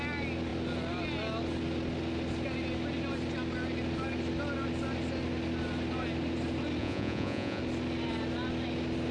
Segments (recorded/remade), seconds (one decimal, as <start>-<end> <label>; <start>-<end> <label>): 0.0-6.8 recorded; 6.8-7.6 remade; 7.6-9.1 recorded